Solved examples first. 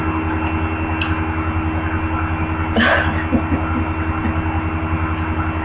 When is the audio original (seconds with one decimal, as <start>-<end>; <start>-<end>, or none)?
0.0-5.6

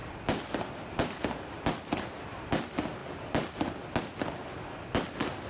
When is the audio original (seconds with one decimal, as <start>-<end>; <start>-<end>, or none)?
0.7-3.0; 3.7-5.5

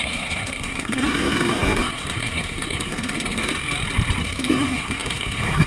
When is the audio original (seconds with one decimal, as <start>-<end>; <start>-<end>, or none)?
3.5-4.2